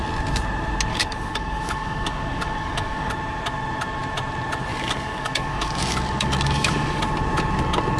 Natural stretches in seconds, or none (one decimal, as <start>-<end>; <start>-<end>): 0.0-0.9; 3.1-4.7; 7.0-8.0